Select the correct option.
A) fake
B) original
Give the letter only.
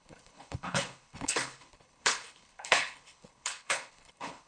A